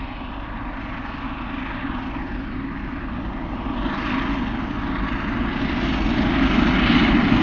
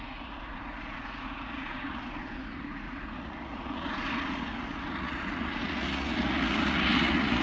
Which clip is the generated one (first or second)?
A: second